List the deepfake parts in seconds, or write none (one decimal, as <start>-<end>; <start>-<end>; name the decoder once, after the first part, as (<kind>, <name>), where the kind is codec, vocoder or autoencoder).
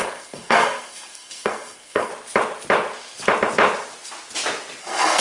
0.0-2.1 (codec, SNAC); 4.8-5.2